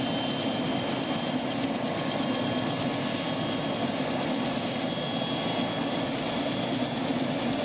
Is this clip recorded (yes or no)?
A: yes